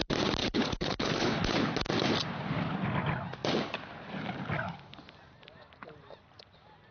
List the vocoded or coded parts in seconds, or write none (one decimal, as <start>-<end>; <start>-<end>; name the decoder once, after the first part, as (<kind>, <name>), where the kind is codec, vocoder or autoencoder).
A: 0.4-1.4 (codec, HILCodec)